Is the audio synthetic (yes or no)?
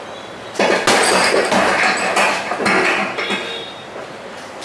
no